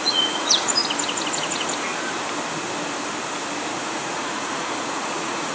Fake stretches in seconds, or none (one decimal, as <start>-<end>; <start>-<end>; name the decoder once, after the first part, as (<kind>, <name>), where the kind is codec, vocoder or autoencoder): 0.0-0.8 (vocoder, Vocos); 1.3-1.9; 3.7-5.5

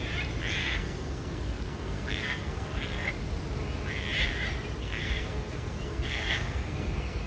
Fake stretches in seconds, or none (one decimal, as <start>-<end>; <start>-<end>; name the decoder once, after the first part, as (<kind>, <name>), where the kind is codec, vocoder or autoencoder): 0.6-3.1 (codec, SNAC); 4.8-7.3

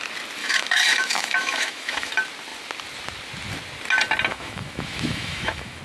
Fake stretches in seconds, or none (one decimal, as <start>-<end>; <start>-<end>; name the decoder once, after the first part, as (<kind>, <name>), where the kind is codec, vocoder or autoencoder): 0.4-2.1 (autoencoder, DAC-VAE); 4.3-5.8

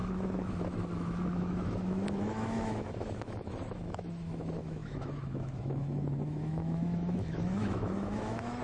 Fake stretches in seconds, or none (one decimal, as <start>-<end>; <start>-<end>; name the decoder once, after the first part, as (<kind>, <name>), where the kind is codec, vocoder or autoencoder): 0.0-8.6 (autoencoder, DAC-VAE)

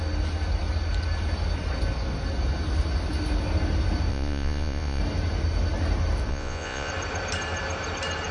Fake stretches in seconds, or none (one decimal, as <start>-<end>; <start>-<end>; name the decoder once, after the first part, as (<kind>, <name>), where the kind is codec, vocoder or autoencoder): 4.1-5.0 (vocoder, Vocos); 6.3-6.9

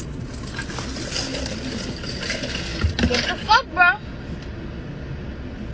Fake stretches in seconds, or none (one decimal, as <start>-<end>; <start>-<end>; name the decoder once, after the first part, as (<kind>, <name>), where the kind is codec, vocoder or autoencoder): none

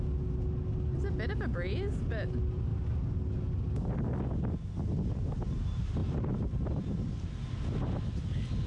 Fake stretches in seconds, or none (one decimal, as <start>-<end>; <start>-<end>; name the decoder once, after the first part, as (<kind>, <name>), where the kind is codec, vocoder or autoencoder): 6.0-7.1 (vocoder, BigVGAN v2)